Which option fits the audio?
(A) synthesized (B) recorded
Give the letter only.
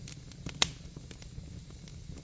B